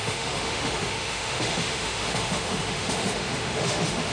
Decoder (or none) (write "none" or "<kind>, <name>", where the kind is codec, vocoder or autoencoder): autoencoder, DAC-VAE